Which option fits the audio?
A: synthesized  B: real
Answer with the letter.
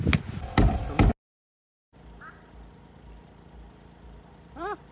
B